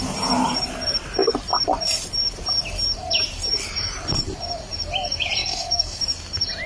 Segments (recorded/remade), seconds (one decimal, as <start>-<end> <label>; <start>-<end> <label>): 0.0-5.4 recorded; 5.4-6.0 remade; 6.0-6.7 recorded